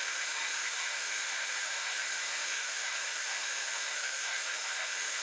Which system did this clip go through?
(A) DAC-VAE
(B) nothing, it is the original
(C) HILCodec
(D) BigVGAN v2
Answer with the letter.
A